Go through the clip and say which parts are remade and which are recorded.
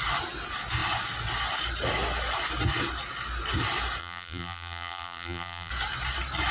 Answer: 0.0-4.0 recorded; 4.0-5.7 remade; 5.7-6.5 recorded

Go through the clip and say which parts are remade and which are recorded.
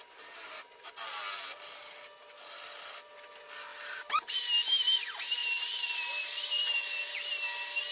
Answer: 0.0-1.8 recorded; 1.8-3.1 remade; 3.1-3.7 recorded; 3.7-4.3 remade; 4.3-5.4 recorded; 5.4-7.3 remade; 7.3-7.9 recorded